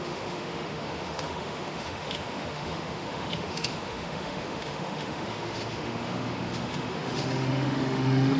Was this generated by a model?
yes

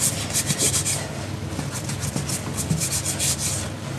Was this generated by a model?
no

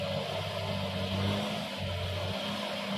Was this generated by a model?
no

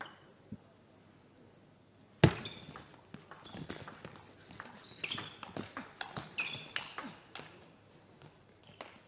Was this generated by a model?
no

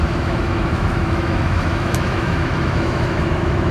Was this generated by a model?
yes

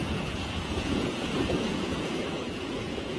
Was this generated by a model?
yes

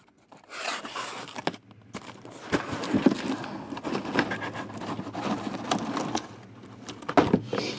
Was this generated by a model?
no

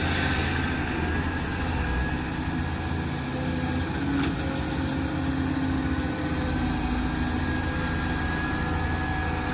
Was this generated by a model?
no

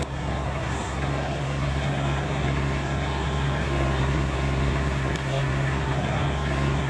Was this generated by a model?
yes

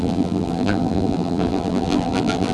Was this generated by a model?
yes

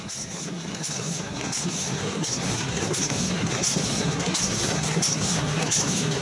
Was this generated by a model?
yes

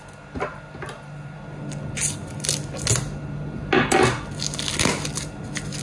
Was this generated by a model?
no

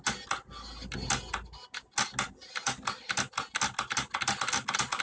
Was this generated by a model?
no